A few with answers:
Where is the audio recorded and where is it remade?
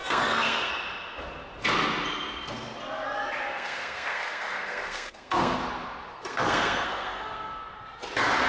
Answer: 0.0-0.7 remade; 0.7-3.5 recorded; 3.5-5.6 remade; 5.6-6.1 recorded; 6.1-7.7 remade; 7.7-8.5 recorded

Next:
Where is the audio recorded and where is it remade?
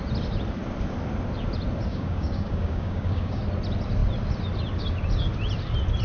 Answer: 0.0-1.9 recorded; 1.9-3.4 remade; 3.4-6.0 recorded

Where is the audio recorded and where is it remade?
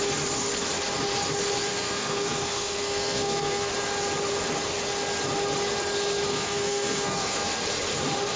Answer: 0.0-1.7 recorded; 1.7-3.7 remade; 3.7-6.3 recorded; 6.3-7.5 remade; 7.5-8.4 recorded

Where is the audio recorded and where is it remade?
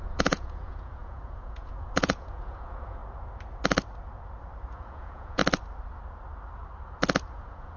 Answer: 0.0-3.0 remade; 3.0-4.7 recorded; 4.7-5.4 remade; 5.4-7.3 recorded; 7.3-7.8 remade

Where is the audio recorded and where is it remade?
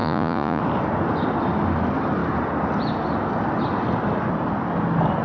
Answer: 0.0-0.6 remade; 0.6-5.2 recorded